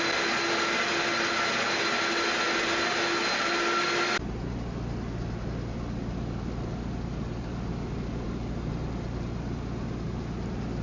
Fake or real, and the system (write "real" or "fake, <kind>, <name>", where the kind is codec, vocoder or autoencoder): real